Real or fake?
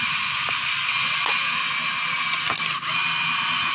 real